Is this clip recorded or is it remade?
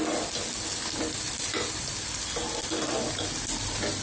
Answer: recorded